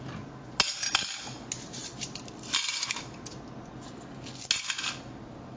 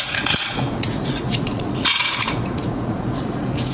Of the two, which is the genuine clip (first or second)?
first